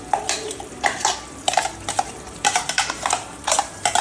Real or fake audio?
fake